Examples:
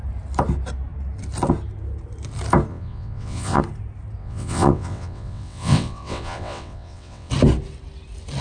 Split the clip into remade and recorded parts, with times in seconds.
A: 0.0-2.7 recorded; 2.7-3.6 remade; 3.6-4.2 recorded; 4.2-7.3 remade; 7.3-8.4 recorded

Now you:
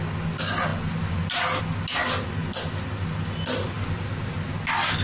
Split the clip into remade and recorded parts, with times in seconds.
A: 0.0-5.0 recorded

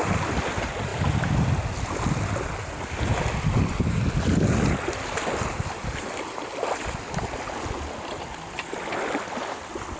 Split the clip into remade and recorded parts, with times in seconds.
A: 0.0-10.0 recorded

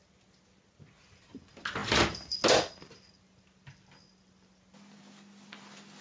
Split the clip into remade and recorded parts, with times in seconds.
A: 0.0-6.0 recorded

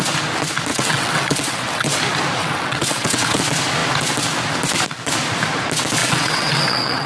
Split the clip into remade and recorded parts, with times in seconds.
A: 0.0-0.7 recorded; 0.7-2.0 remade; 2.0-2.4 recorded; 2.4-3.4 remade; 3.4-6.0 recorded; 6.0-7.1 remade

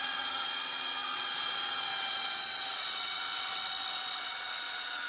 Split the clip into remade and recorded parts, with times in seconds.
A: 0.0-5.1 remade